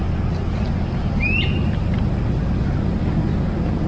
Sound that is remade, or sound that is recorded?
recorded